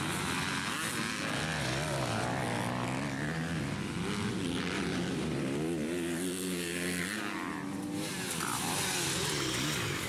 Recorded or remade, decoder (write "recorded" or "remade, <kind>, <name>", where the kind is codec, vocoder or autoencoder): recorded